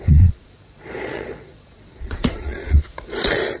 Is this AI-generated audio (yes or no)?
yes